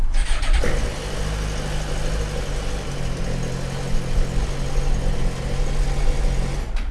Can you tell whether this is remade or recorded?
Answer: recorded